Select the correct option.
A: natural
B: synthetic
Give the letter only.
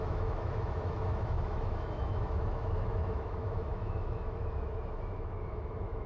B